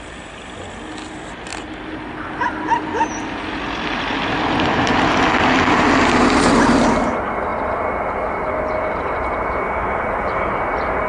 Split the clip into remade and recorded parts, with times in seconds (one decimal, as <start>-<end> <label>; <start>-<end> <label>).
0.0-11.1 recorded